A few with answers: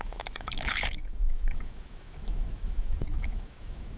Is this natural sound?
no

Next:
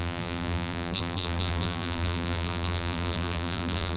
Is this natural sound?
no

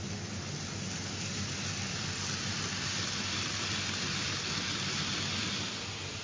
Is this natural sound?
yes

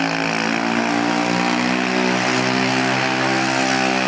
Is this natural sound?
yes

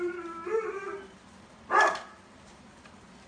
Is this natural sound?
no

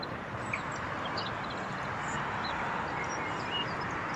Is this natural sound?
yes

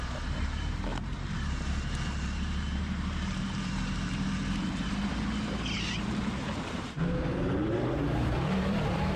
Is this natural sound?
no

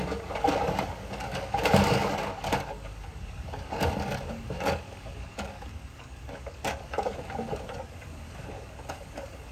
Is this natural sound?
no